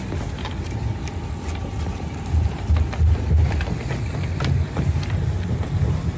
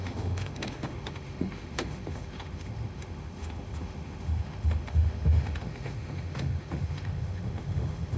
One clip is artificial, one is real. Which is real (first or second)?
first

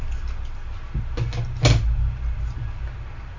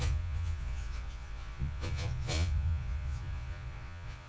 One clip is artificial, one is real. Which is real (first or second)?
first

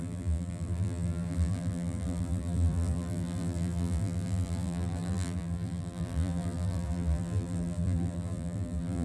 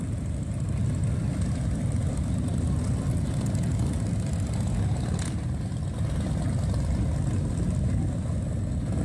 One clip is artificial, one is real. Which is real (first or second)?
second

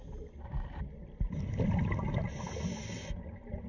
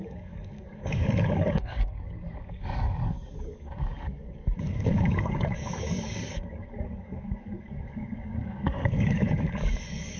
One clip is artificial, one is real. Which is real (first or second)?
first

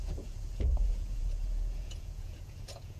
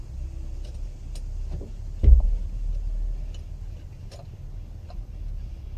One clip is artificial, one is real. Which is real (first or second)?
second